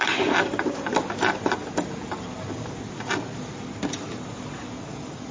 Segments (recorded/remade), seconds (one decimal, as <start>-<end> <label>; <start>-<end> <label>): 0.0-5.3 recorded